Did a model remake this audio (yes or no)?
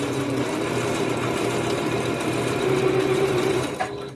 yes